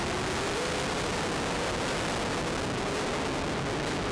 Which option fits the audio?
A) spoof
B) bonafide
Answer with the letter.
B